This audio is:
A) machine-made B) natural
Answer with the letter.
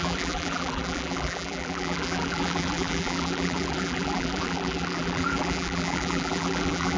A